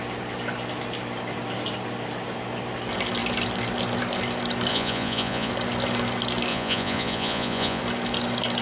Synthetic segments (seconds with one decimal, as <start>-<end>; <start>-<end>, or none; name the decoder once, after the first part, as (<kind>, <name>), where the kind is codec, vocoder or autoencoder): 4.7-5.5 (vocoder, Vocos); 6.5-7.8